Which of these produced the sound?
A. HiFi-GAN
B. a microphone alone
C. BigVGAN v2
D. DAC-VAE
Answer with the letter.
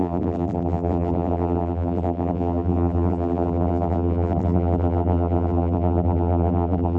C